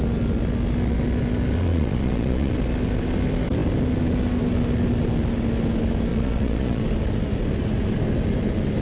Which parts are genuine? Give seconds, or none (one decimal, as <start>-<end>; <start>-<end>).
0.0-1.7; 2.5-6.1; 6.8-8.8